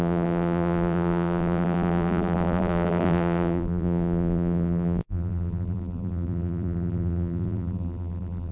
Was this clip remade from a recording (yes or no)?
yes